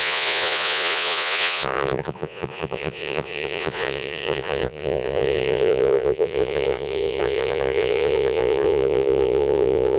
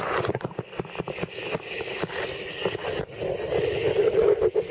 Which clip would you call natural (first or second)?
second